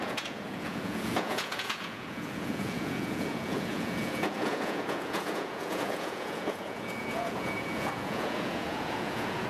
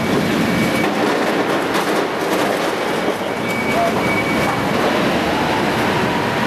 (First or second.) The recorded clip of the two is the second